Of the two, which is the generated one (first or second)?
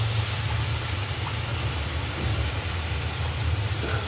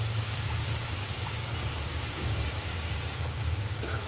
second